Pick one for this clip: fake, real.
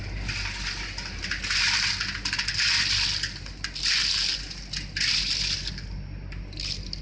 real